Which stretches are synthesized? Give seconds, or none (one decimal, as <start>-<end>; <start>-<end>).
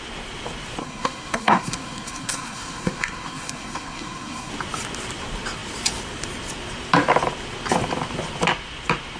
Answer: 0.8-4.5